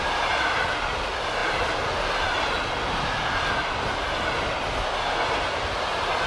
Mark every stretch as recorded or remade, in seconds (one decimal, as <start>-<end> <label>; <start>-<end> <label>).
0.0-6.3 recorded